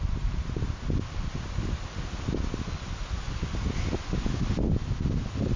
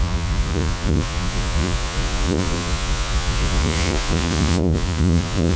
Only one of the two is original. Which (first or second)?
first